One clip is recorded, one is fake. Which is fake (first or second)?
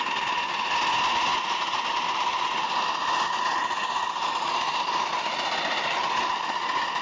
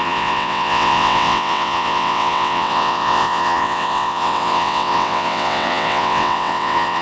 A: second